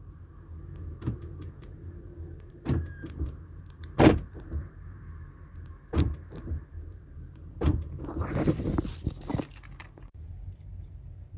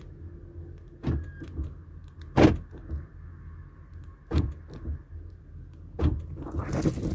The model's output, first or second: first